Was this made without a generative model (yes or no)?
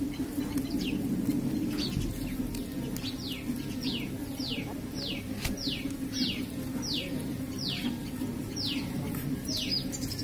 yes